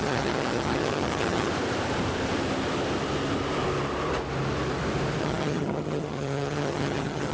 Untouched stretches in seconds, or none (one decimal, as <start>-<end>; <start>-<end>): 1.5-5.2